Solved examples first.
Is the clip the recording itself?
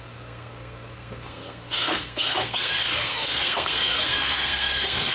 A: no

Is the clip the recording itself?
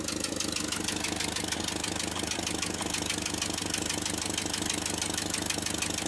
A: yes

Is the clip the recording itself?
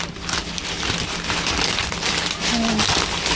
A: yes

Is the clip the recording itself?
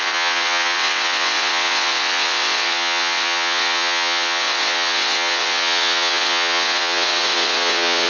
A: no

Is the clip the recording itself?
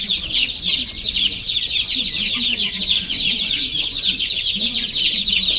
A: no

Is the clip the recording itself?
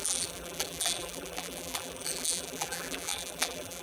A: no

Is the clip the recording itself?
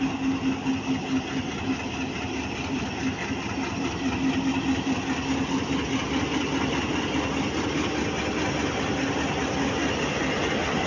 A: yes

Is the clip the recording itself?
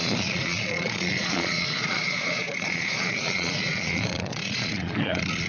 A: no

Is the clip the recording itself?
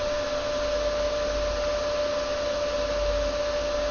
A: yes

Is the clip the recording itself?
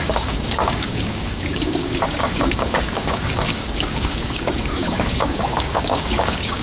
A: no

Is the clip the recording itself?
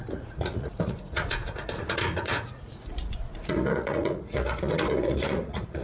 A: no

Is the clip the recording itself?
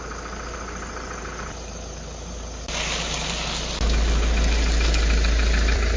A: yes